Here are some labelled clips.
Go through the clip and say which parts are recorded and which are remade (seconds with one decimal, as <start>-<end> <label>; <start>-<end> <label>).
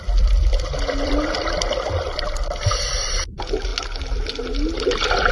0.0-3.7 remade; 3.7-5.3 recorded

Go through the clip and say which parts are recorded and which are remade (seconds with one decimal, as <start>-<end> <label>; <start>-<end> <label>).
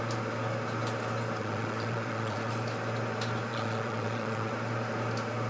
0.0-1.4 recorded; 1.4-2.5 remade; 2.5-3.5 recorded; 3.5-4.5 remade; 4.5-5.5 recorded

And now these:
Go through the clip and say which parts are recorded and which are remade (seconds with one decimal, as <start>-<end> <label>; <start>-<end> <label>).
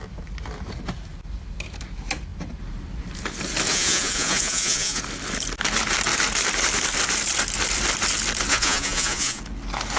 0.0-3.7 recorded; 3.7-5.0 remade; 5.0-8.5 recorded; 8.5-9.4 remade; 9.4-10.0 recorded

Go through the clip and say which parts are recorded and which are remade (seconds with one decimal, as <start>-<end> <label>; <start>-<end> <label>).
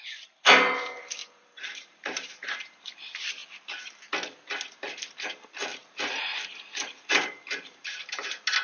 0.0-1.2 recorded; 1.2-2.7 remade; 2.7-5.7 recorded; 5.7-8.0 remade; 8.0-8.6 recorded